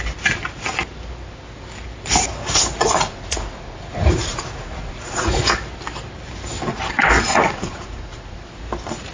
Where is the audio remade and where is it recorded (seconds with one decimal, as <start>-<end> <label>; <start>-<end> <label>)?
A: 0.0-2.7 recorded; 2.7-5.4 remade; 5.4-7.3 recorded; 7.3-8.6 remade; 8.6-9.1 recorded